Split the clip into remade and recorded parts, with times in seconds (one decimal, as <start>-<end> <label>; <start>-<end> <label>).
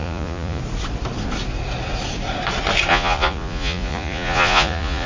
0.0-0.6 remade; 0.6-2.9 recorded; 2.9-5.1 remade